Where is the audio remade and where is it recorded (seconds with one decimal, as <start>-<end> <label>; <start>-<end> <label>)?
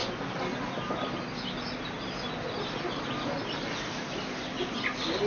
0.0-3.0 recorded; 3.0-5.3 remade